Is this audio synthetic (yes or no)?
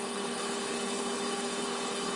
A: yes